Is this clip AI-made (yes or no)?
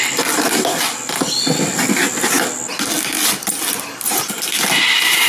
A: no